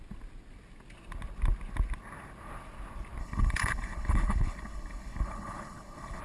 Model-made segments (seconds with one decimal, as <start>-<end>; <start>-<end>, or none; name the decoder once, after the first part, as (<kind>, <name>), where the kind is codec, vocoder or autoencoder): 3.2-6.2 (codec, HILCodec)